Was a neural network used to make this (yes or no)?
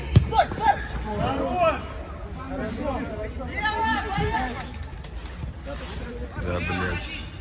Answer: no